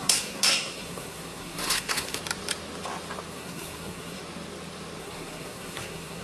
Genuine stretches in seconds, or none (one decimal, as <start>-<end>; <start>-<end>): 2.2-3.3; 4.2-5.0